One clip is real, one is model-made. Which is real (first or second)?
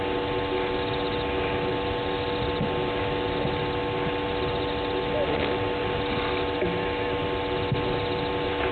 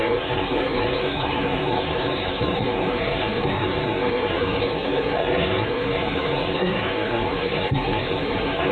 first